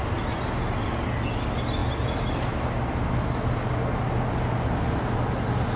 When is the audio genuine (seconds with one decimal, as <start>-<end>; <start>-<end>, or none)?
0.0-5.8